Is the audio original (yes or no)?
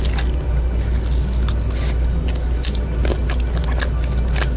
yes